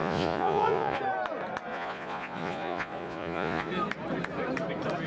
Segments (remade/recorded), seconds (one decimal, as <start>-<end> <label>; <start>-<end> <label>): 0.0-1.0 remade; 1.0-1.7 recorded; 1.7-3.7 remade; 3.7-5.1 recorded